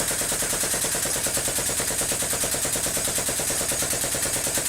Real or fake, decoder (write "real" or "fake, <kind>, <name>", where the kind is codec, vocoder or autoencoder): fake, vocoder, BigVGAN v2